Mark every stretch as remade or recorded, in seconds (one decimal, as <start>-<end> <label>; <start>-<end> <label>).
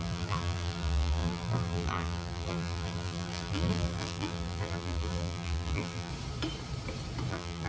0.0-6.1 remade; 6.1-7.3 recorded; 7.3-7.7 remade